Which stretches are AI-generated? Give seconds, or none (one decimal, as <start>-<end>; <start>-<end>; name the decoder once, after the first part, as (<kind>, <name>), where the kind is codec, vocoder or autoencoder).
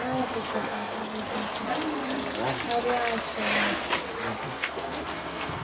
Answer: 0.0-1.0 (codec, SNAC); 4.4-5.6